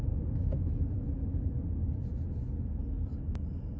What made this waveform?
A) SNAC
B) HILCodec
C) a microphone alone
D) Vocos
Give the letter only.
C